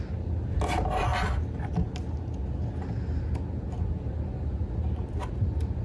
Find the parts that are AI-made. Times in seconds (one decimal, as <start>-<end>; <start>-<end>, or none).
none